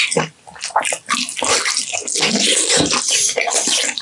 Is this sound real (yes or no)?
yes